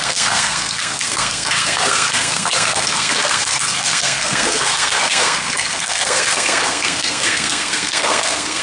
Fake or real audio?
fake